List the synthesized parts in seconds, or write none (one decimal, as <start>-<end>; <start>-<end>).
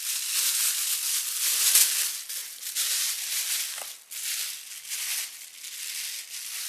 none